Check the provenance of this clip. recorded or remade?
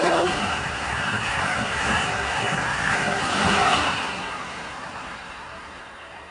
remade